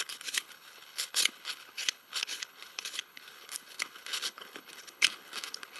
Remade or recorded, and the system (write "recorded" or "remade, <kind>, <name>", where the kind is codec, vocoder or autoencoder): remade, codec, HILCodec